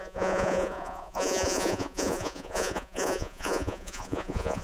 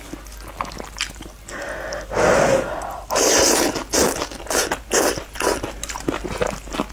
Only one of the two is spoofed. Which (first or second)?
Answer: first